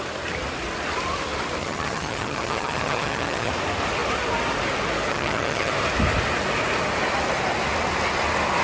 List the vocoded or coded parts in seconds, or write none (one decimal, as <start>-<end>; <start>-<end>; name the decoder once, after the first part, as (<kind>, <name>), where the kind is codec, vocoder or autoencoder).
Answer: 1.6-3.5 (vocoder, HiFi-GAN); 5.1-5.7